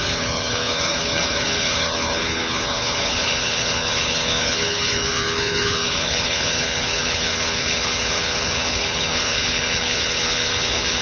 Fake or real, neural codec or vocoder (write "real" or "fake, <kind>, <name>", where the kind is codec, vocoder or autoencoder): fake, codec, HILCodec